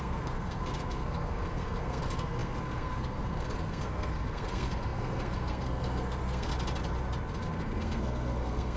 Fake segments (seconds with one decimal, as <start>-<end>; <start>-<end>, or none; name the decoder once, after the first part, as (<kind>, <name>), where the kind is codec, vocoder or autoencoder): 0.0-6.5 (codec, SNAC); 7.4-8.8